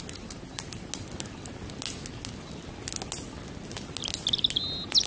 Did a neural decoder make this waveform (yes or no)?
no